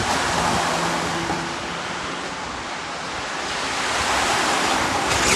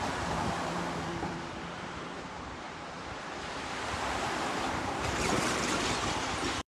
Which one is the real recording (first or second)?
first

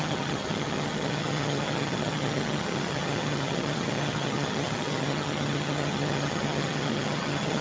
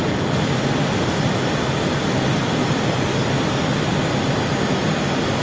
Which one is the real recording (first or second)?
second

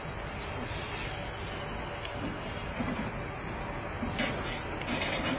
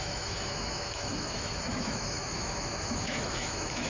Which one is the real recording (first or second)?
first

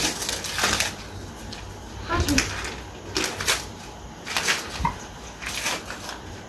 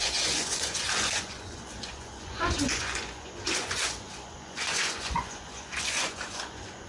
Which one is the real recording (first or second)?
first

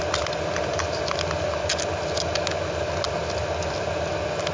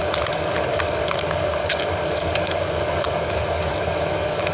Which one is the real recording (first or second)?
first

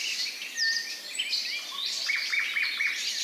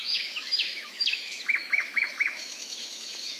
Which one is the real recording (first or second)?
first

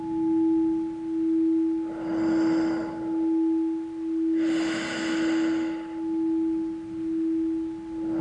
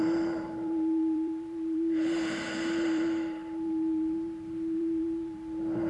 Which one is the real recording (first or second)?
first